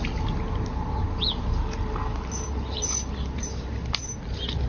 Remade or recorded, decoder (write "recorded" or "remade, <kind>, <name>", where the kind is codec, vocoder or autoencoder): recorded